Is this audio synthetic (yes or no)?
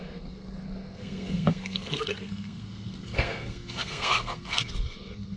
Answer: yes